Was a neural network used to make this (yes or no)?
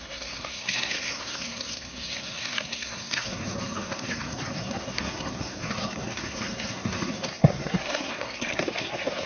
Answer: yes